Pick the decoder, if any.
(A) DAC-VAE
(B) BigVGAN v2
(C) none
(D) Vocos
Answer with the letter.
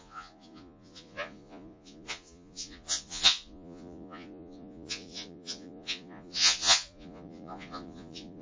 D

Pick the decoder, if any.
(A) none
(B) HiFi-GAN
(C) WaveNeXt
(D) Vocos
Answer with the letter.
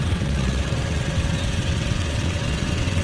C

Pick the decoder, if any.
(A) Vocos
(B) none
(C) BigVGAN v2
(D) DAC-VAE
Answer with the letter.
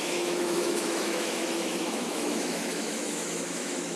D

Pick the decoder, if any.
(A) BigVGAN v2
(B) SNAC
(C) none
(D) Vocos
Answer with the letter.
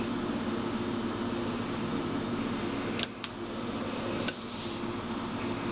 C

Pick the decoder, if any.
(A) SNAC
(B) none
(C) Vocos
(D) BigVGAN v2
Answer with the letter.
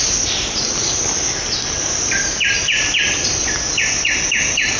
B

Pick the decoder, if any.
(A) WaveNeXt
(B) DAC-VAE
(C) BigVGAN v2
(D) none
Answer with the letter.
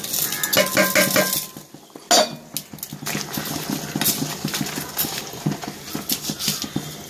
D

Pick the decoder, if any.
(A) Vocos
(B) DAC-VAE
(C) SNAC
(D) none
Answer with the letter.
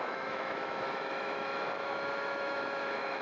B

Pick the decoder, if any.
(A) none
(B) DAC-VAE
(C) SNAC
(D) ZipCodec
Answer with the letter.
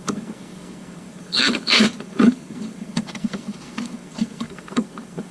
C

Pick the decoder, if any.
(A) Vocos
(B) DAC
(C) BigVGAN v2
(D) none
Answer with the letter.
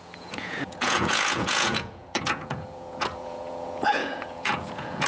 A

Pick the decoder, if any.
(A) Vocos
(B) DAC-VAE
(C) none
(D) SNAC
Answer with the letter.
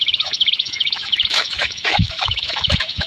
B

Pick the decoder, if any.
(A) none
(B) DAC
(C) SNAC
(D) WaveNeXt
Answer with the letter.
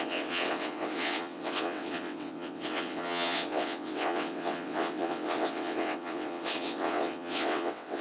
D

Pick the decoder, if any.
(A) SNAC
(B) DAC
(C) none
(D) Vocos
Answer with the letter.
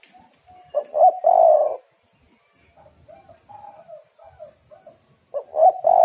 C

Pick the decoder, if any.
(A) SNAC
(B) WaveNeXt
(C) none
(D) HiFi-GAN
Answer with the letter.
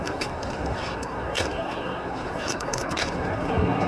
A